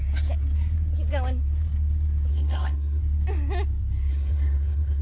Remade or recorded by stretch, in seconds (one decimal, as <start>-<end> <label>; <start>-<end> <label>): 0.0-2.3 recorded; 2.3-3.0 remade; 3.0-4.1 recorded; 4.1-5.0 remade